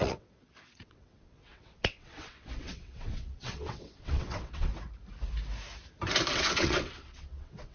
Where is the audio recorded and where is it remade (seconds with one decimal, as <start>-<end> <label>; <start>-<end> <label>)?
0.0-4.7 remade; 4.7-6.3 recorded; 6.3-7.7 remade